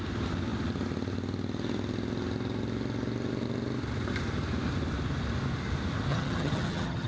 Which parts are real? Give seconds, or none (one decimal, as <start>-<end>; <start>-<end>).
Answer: 0.0-6.1